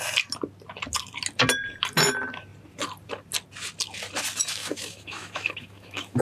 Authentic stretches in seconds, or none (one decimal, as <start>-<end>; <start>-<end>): 0.0-4.6

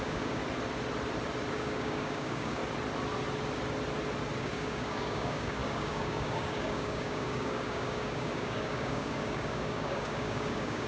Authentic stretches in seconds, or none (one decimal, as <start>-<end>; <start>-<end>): 0.4-1.5; 2.6-4.4

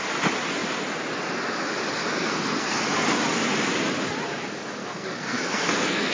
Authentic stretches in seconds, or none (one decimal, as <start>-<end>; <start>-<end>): 0.0-2.1; 2.8-4.8

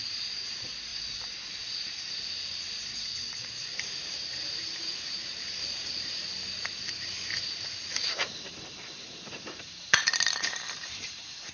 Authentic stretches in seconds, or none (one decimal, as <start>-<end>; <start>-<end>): 0.9-2.9

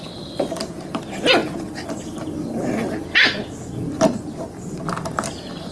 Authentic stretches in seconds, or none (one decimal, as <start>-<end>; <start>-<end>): 0.0-5.7

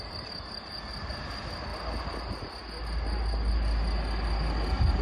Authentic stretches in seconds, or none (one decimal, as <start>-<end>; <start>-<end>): 0.0-5.0

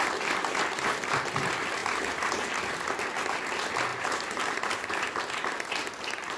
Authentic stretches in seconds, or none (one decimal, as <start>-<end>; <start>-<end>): 0.0-3.9; 4.9-6.4